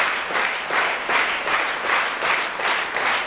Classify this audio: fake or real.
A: real